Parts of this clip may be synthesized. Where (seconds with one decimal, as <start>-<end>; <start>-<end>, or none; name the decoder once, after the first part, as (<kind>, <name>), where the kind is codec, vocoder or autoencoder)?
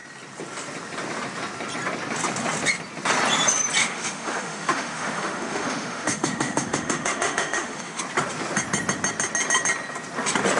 3.8-8.0 (autoencoder, DAC-VAE)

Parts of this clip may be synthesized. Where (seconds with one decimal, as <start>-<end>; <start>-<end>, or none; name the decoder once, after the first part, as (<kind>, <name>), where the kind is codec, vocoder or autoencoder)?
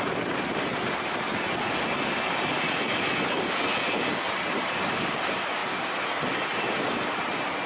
none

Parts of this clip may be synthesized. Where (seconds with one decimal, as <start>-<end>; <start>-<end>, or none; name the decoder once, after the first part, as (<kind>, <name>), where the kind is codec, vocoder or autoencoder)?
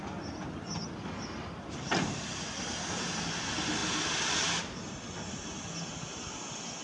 0.0-6.8 (vocoder, BigVGAN v2)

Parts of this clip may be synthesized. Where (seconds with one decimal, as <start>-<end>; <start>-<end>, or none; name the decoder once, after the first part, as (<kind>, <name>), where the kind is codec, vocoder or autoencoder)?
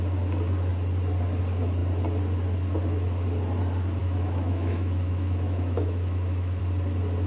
4.0-6.6 (autoencoder, DAC-VAE)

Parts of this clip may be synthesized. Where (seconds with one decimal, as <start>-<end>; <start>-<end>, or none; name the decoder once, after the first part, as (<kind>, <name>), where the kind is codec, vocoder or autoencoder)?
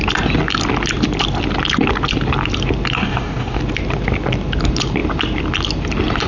3.0-3.6 (codec, DAC)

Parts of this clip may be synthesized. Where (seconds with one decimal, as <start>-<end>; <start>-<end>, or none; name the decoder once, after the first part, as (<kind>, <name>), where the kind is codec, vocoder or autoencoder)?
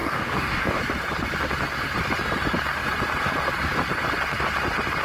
0.0-0.8 (codec, DAC)